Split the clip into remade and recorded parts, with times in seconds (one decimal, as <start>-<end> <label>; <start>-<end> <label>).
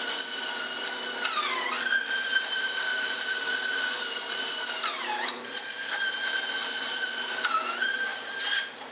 0.0-8.9 recorded